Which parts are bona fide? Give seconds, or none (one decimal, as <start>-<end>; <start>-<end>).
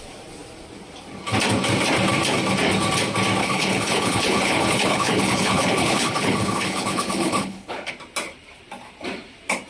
0.0-3.4; 7.9-9.7